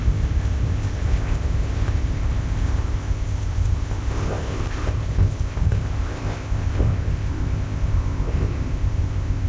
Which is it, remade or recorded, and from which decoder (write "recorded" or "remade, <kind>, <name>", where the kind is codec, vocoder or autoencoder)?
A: remade, codec, ZipCodec